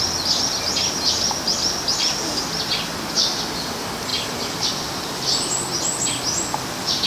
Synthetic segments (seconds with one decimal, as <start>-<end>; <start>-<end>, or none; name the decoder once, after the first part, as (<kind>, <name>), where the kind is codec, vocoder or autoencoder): 4.1-5.2 (vocoder, BigVGAN v2)